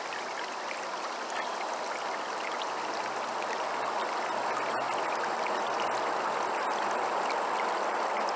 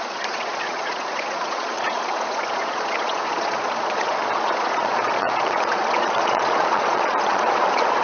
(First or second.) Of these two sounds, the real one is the first